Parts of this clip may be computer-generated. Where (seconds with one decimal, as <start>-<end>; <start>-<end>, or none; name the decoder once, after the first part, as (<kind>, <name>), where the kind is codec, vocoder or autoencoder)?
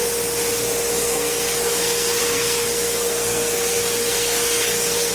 0.9-5.1 (codec, SNAC)